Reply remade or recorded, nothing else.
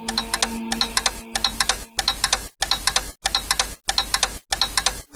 recorded